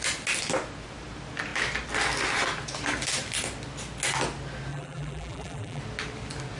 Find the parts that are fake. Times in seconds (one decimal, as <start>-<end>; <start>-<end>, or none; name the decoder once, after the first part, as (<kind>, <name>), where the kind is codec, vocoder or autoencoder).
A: 4.7-5.8 (vocoder, BigVGAN v2)